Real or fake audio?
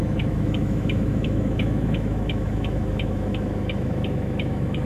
fake